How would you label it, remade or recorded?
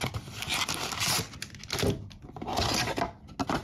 recorded